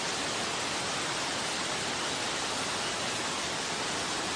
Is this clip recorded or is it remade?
recorded